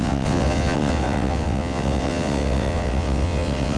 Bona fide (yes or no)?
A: no